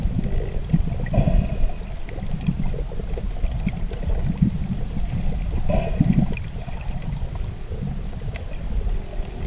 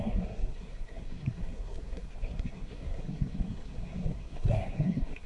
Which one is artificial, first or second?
second